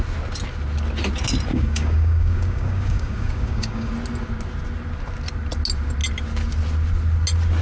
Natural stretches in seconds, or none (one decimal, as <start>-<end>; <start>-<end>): 0.0-1.5; 3.9-7.6